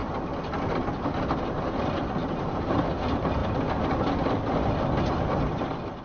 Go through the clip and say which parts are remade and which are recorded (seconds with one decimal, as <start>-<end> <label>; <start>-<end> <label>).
0.0-2.2 recorded; 2.2-2.9 remade; 2.9-6.0 recorded